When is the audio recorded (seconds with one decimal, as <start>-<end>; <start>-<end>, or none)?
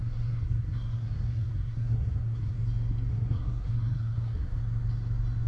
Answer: 2.5-3.1; 4.6-5.5